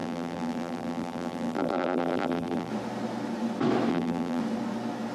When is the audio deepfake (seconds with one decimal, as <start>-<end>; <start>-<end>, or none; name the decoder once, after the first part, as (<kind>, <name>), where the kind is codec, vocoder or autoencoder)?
0.0-2.7 (vocoder, BigVGAN v2); 3.9-4.4